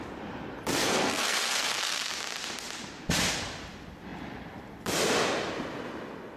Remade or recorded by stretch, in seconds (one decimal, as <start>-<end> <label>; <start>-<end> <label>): 0.0-0.8 recorded; 0.8-2.1 remade; 2.1-6.4 recorded